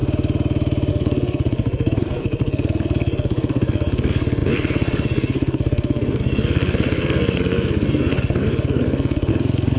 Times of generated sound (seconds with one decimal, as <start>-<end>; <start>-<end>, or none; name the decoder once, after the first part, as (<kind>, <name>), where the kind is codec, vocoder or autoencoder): 0.9-9.8 (codec, SNAC)